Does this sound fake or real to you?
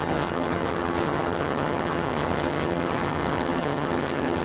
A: fake